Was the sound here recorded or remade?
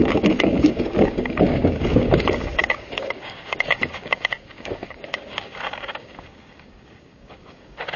remade